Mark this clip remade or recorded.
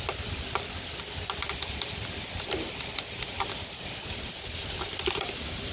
recorded